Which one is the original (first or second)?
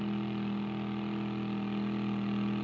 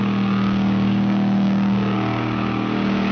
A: first